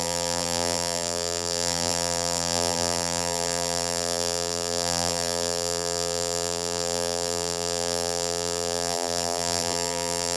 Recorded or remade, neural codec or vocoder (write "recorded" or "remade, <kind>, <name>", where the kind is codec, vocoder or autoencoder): remade, vocoder, BigVGAN v2